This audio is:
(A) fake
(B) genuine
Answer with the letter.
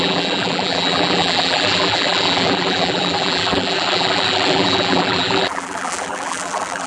A